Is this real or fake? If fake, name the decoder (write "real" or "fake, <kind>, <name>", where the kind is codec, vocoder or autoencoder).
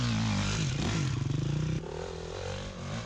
real